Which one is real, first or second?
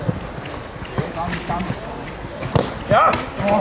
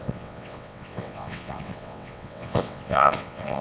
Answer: first